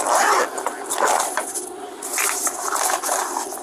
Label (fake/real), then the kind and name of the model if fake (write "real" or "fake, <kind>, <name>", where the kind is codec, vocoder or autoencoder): real